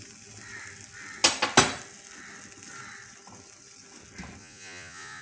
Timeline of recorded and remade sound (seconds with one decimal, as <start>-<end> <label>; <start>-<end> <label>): 0.0-4.4 recorded; 4.4-5.2 remade